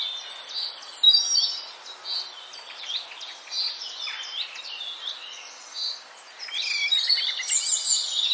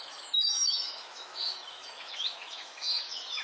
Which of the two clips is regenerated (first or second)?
second